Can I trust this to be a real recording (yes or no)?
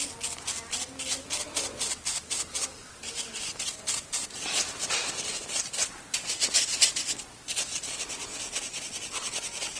yes